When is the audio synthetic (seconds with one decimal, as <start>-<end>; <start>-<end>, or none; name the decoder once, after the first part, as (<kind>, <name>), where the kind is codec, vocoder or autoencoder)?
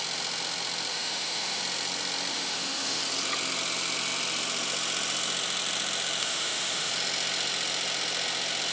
0.9-1.6 (autoencoder, DAC-VAE); 2.3-3.0; 6.2-6.9